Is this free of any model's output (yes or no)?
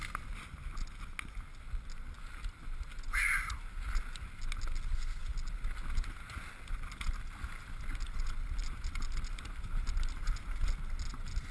yes